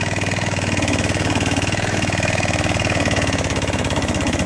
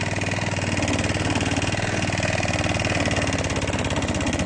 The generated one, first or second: first